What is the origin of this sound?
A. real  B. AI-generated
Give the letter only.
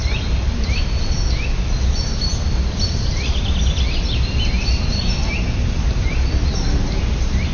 A